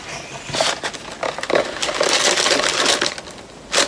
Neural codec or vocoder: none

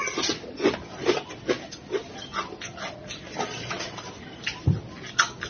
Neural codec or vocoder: none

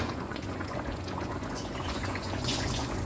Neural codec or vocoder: vocoder, Vocos